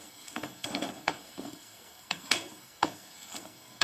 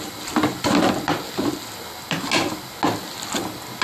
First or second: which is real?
second